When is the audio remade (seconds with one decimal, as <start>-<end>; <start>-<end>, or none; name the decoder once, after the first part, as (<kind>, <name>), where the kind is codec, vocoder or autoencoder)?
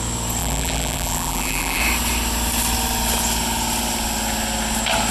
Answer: 0.4-1.8 (vocoder, BigVGAN v2)